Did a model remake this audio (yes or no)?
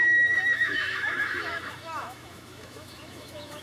yes